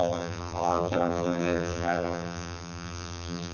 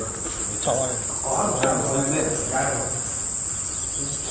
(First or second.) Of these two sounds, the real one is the second